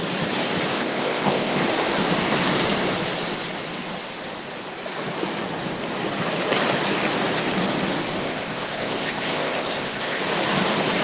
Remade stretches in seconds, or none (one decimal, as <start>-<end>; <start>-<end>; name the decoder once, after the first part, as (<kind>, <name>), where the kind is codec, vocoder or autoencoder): 0.7-1.6 (codec, ZipCodec); 8.2-10.2